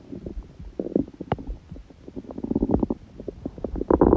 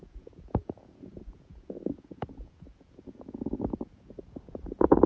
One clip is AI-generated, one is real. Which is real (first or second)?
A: first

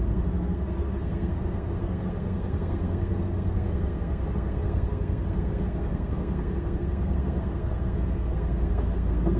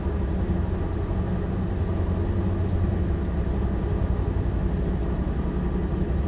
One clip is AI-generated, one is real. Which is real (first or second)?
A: second